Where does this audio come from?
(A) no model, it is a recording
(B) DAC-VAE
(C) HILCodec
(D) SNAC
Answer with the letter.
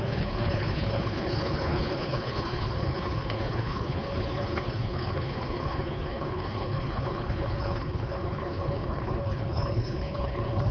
C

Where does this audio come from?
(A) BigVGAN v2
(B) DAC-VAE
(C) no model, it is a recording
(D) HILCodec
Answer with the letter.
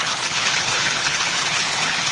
D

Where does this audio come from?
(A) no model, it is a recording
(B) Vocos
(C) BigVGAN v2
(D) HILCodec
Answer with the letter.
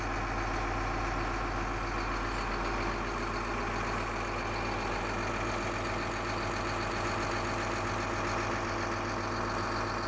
A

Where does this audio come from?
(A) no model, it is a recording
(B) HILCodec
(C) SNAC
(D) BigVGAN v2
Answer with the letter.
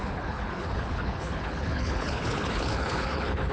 B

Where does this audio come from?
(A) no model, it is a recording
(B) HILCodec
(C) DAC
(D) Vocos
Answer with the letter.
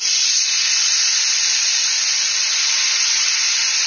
A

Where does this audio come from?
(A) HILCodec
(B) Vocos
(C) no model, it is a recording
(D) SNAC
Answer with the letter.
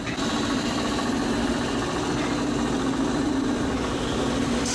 C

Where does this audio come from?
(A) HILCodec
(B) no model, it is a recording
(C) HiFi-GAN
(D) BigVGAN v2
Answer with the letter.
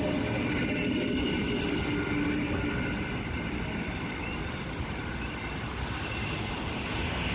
B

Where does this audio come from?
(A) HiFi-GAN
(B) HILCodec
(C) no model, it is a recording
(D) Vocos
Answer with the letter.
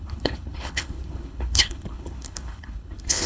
B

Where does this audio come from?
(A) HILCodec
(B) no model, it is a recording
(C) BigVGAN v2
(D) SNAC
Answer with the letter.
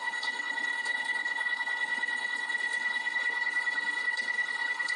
A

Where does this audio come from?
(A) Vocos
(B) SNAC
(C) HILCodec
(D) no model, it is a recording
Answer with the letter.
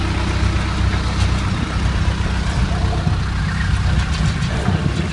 D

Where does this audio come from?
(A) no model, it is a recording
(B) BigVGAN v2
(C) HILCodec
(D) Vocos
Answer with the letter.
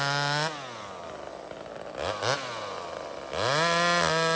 A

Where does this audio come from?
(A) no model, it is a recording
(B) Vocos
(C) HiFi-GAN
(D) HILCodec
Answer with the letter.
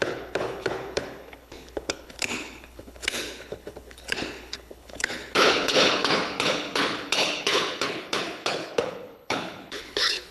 D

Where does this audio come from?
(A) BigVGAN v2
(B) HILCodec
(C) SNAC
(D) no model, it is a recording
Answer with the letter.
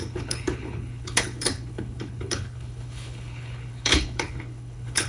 B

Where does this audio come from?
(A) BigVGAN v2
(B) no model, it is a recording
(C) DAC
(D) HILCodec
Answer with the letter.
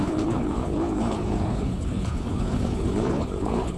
D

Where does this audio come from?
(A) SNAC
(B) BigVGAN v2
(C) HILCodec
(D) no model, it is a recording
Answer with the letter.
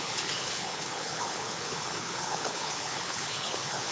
C